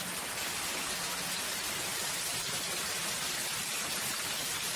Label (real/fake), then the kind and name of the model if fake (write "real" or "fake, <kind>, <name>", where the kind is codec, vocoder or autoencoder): real